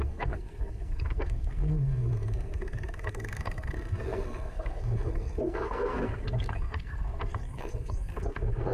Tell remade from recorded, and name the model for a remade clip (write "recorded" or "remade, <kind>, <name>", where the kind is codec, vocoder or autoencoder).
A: remade, codec, SNAC